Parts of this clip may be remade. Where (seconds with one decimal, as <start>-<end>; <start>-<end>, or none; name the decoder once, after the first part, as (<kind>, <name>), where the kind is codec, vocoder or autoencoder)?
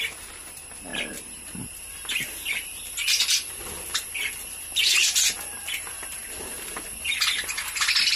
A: none